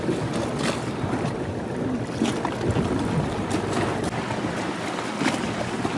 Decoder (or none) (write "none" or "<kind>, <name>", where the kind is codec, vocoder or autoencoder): none